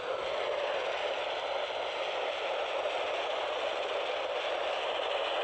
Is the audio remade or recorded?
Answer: recorded